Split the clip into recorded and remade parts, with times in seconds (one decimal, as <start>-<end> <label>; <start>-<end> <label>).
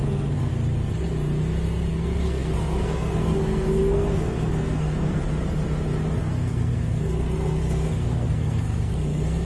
0.0-0.5 remade; 0.5-1.9 recorded; 1.9-5.2 remade; 5.2-6.2 recorded; 6.2-9.4 remade